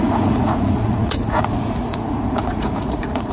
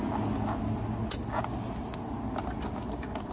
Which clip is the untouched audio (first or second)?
second